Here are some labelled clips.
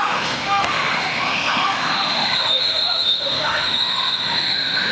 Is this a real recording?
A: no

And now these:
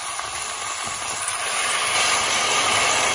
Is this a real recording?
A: yes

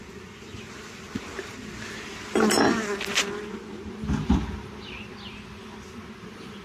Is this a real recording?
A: yes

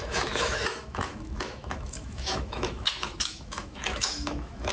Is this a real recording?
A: no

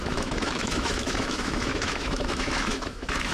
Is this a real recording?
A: no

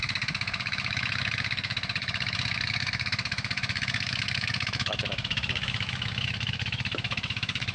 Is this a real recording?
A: no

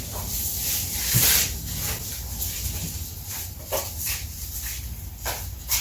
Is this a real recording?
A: yes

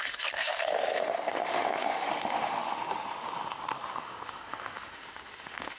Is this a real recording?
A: no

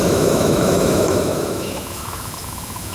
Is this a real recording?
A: no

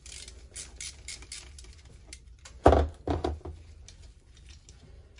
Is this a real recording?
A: yes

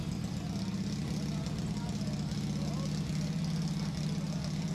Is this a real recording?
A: yes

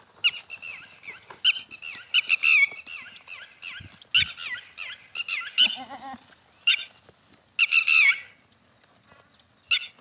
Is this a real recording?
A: yes